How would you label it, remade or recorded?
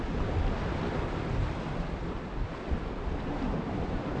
recorded